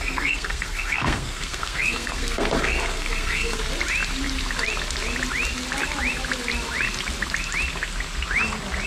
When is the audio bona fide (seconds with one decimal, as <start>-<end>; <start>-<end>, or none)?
3.6-8.9